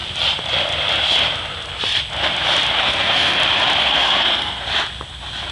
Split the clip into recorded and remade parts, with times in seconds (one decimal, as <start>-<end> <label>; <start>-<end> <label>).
0.0-2.8 recorded; 2.8-3.4 remade; 3.4-3.8 recorded; 3.8-4.6 remade; 4.6-5.5 recorded